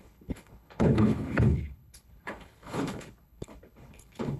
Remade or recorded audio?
remade